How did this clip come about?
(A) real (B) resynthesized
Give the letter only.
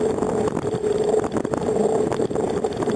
A